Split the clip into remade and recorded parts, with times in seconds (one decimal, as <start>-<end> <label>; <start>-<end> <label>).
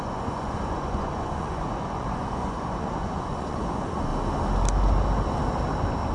0.0-4.1 remade; 4.1-6.1 recorded